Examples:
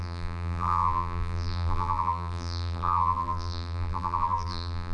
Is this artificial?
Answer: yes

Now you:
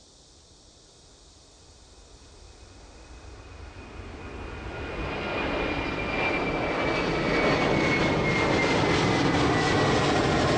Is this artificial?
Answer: no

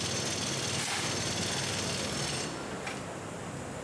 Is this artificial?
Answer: no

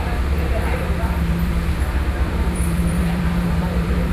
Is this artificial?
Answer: yes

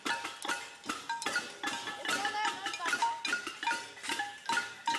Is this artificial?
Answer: no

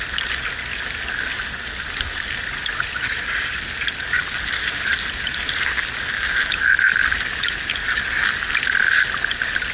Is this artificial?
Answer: no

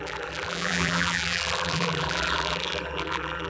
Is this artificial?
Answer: yes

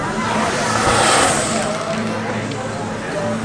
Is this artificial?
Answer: no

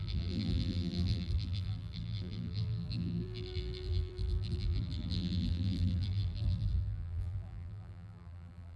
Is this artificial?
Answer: yes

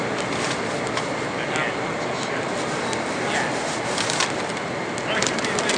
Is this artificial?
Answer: no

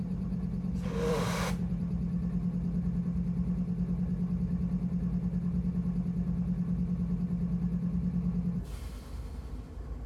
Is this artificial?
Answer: no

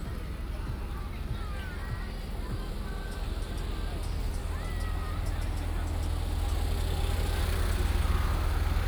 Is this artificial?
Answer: no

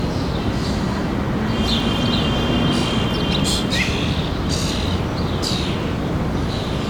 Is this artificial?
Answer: no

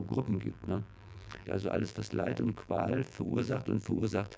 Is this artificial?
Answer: yes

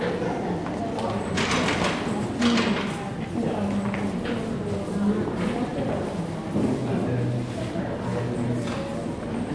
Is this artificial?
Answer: no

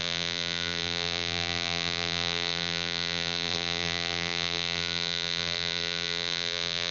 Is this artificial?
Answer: yes